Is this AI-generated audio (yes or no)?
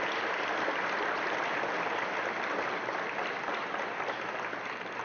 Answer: no